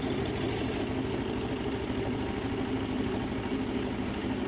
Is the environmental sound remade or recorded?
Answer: recorded